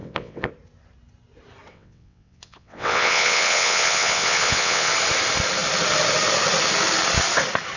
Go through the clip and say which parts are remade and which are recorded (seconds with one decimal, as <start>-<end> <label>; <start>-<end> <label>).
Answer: 0.0-0.5 remade; 0.5-1.7 recorded; 1.7-4.9 remade; 4.9-7.8 recorded